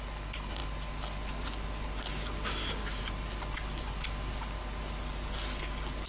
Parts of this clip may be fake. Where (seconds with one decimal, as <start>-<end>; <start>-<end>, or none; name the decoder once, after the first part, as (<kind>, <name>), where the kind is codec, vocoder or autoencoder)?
none